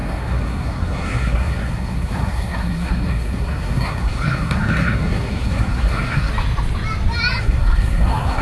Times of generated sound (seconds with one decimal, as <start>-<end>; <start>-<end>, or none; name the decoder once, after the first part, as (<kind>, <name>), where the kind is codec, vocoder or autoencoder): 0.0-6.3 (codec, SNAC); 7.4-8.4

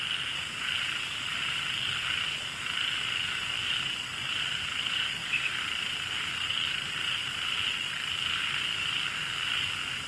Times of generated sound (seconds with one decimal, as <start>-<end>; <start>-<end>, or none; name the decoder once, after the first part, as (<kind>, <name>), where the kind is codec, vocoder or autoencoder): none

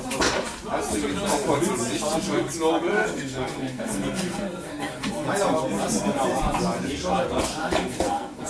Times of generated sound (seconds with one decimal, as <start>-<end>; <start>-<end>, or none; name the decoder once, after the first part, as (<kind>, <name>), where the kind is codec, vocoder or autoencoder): 2.9-5.3 (codec, SNAC); 7.6-8.5

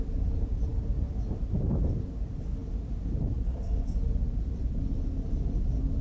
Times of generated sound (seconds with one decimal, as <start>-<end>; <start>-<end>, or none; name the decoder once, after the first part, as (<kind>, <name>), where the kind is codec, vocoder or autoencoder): none